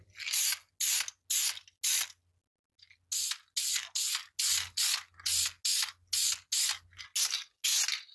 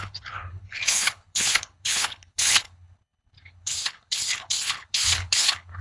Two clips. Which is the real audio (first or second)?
first